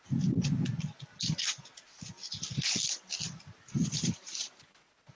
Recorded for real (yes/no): yes